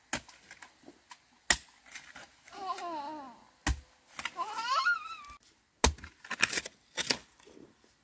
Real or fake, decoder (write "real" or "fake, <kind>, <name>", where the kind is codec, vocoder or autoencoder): real